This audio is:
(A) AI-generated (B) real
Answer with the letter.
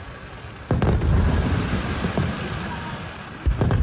B